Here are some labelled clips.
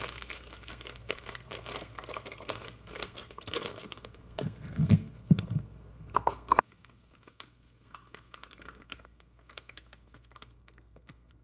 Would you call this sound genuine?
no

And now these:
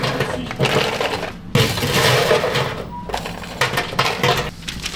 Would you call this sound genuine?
yes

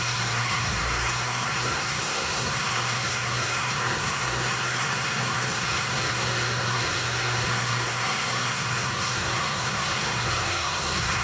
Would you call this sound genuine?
no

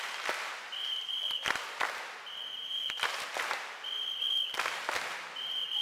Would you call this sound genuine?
yes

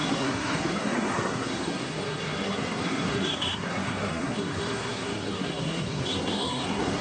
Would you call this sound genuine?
no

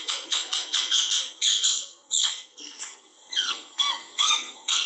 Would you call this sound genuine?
no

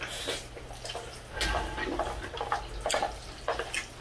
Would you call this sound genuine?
yes